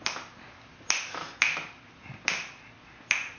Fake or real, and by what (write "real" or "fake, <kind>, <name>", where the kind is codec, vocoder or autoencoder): real